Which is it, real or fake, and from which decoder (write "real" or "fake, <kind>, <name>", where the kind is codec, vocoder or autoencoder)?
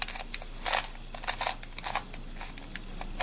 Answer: real